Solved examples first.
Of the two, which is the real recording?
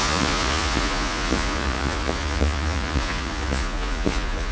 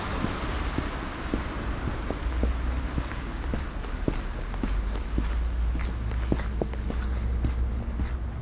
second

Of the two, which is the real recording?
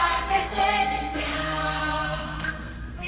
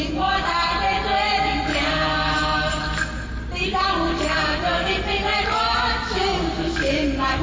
second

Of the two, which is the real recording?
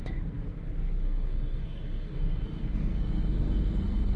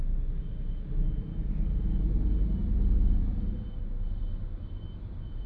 second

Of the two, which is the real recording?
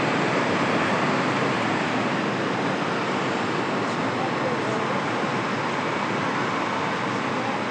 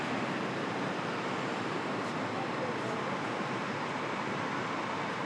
first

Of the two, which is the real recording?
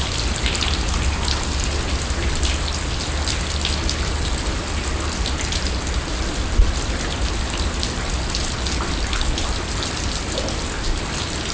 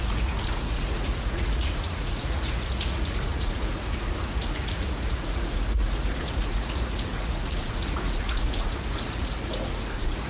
first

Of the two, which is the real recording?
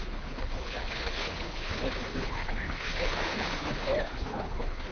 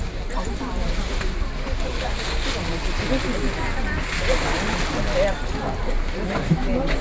second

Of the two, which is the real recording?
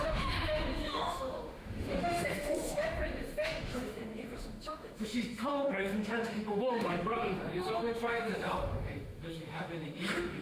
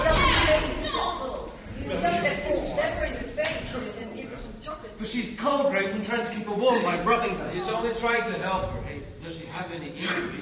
second